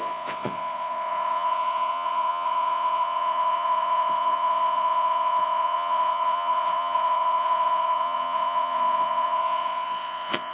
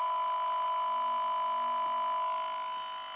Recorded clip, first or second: second